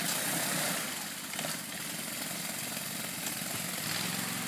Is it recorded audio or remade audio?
recorded